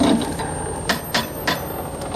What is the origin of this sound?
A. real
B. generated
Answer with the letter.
A